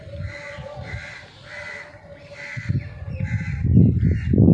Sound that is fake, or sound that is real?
real